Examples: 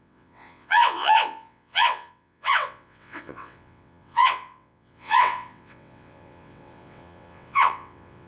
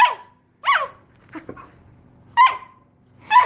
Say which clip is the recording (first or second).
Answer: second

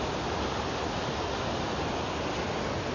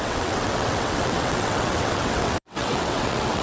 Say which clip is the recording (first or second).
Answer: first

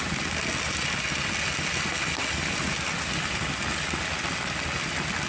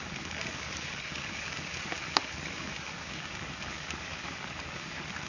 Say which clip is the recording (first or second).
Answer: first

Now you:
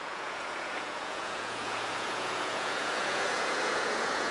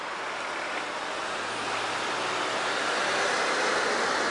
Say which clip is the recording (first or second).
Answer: second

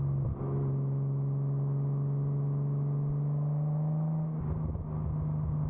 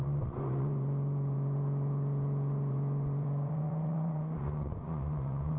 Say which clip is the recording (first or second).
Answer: first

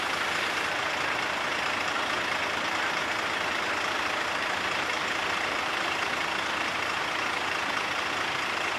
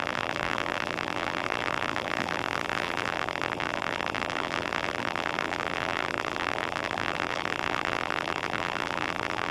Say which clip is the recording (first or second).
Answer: first